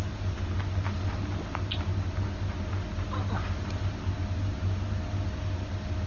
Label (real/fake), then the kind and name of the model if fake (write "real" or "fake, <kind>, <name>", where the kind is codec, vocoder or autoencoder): real